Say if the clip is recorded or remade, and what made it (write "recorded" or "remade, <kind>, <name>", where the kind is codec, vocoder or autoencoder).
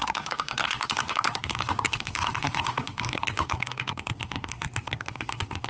remade, codec, SNAC